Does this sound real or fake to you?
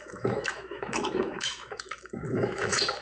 fake